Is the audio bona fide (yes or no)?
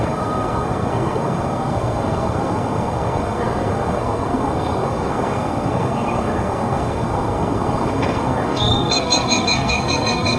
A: no